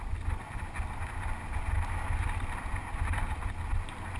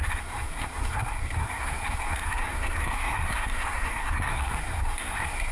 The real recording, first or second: first